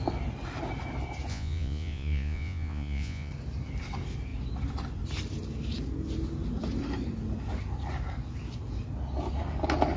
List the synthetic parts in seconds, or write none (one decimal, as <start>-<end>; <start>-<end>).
1.3-3.3